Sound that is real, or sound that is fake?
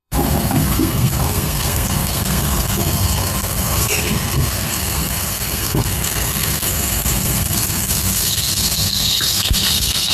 fake